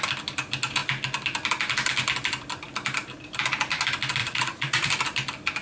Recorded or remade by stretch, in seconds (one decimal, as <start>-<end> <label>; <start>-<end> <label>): 0.0-4.2 recorded; 4.2-4.9 remade; 4.9-5.6 recorded